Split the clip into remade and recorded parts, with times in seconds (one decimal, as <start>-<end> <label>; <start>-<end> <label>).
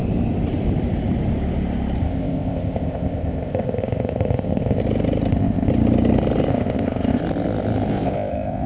0.0-2.0 recorded; 2.0-4.8 remade; 4.8-5.3 recorded; 5.3-5.7 remade; 5.7-6.5 recorded; 6.5-7.2 remade; 7.2-7.9 recorded; 7.9-8.7 remade